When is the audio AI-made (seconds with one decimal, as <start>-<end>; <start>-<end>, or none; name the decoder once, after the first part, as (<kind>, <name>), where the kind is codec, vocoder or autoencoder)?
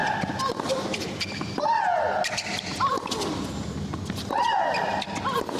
none